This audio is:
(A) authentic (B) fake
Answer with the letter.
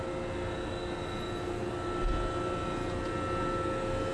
A